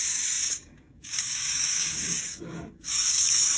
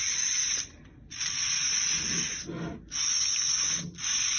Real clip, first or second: second